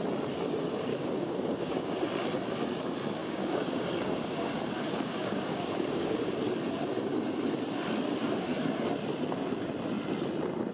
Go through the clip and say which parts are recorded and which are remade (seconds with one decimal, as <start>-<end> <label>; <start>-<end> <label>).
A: 0.0-0.9 recorded; 0.9-1.9 remade; 1.9-3.2 recorded; 3.2-6.4 remade; 6.4-10.7 recorded